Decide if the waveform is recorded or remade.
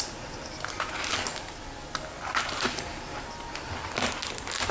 recorded